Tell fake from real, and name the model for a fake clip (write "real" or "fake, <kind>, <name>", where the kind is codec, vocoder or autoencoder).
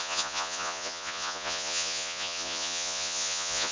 fake, vocoder, Vocos